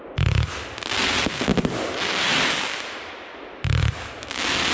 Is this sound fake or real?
real